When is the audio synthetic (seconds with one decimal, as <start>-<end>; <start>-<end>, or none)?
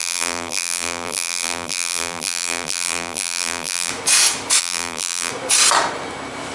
0.0-3.9; 4.6-5.3